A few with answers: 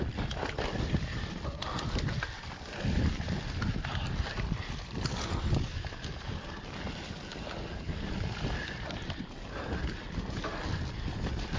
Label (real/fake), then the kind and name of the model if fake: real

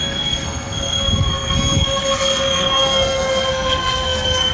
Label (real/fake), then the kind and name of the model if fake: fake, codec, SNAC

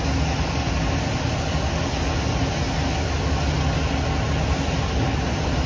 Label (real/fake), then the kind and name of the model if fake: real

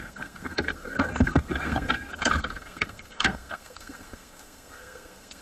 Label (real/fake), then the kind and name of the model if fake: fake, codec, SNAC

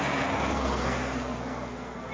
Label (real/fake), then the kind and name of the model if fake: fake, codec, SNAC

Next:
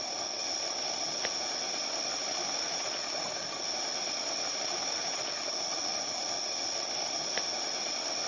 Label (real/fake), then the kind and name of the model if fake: real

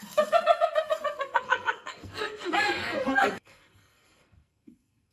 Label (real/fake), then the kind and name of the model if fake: fake, codec, SNAC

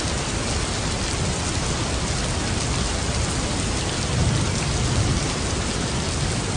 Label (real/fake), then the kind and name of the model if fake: real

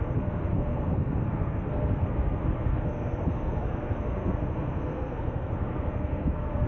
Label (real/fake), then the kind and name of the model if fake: fake, codec, SNAC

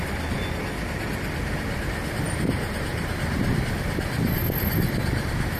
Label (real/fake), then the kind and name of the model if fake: real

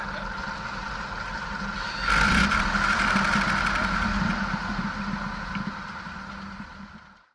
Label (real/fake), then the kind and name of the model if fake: real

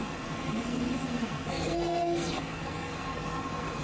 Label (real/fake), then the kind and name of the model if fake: fake, codec, SNAC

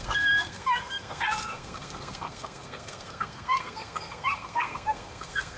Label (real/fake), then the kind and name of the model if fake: fake, codec, SNAC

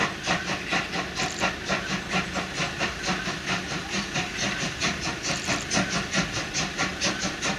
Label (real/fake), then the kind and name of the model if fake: real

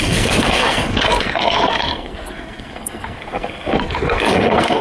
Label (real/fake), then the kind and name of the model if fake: fake, codec, SNAC